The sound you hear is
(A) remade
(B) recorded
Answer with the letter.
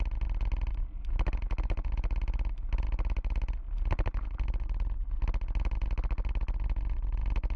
B